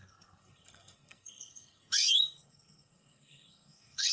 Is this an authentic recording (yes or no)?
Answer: no